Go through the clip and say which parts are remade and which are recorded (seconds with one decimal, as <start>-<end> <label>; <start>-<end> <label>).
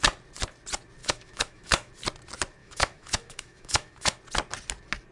0.0-1.0 recorded; 1.0-1.9 remade; 1.9-2.6 recorded; 2.6-4.2 remade; 4.2-5.1 recorded